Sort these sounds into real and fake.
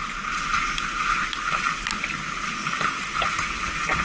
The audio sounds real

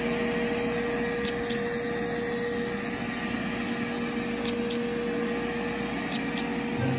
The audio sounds real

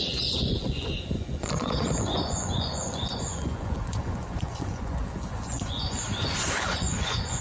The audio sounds fake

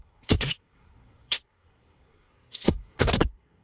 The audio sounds fake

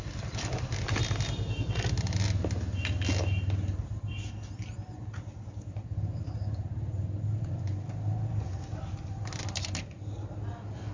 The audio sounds real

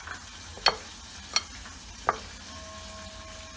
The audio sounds real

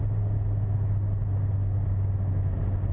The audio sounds real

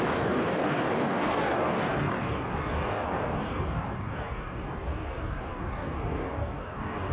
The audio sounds fake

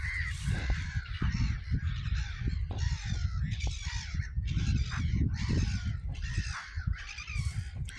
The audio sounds real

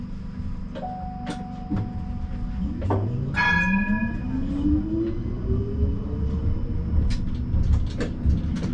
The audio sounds real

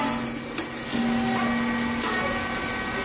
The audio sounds real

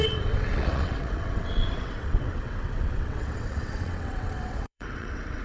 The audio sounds fake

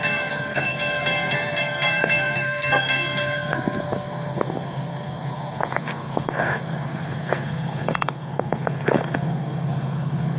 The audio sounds fake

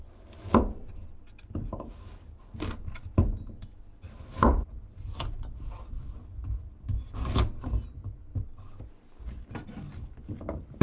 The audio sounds real